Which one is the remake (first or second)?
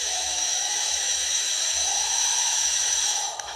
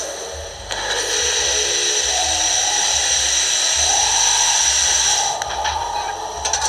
first